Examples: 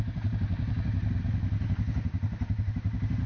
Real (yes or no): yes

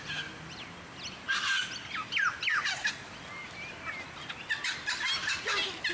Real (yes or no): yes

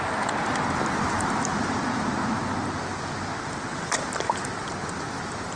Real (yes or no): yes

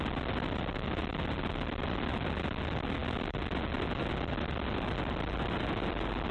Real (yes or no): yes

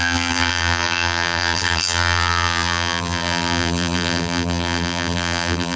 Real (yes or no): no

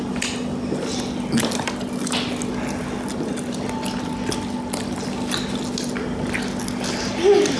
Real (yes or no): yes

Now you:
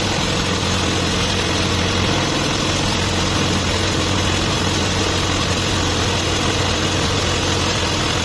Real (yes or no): yes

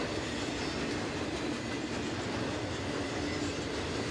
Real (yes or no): yes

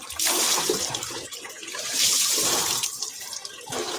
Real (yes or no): no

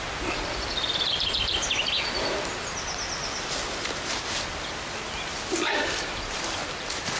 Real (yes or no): no